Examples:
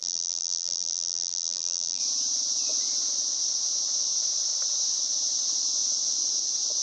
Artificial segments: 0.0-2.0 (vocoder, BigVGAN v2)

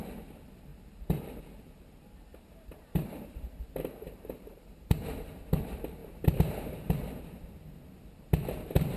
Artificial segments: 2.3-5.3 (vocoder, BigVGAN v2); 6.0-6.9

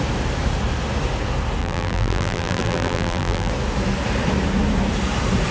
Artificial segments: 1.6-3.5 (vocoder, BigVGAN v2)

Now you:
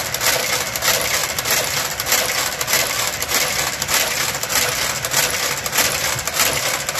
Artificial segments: 1.2-3.5 (vocoder, BigVGAN v2)

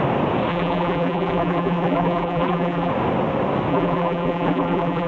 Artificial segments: 0.5-2.9 (vocoder, BigVGAN v2); 3.7-5.1

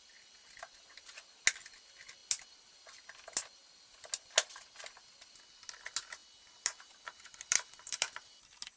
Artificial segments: none